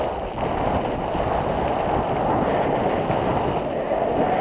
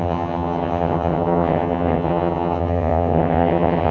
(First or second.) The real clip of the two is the first